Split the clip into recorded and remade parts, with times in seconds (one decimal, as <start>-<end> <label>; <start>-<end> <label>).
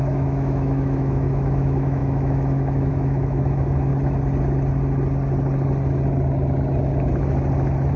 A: 0.0-3.9 remade; 3.9-8.0 recorded